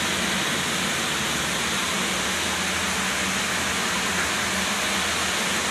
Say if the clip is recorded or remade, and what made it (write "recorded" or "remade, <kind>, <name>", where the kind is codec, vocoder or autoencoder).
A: recorded